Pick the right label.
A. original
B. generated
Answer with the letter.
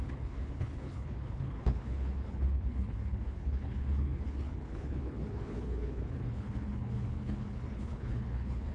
B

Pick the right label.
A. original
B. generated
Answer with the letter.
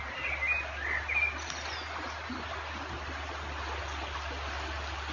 A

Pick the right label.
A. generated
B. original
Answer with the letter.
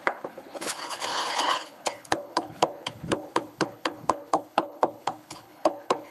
A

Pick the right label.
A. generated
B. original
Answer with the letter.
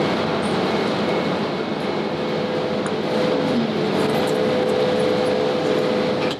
B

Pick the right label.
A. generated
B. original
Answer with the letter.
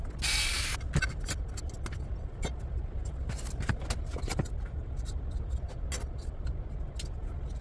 B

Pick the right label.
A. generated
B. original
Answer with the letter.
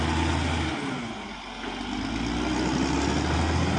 B